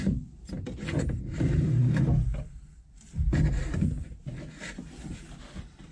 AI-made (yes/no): no